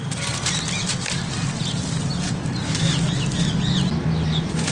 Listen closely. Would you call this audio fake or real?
real